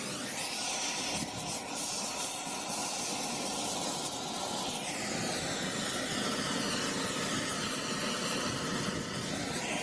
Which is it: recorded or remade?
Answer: recorded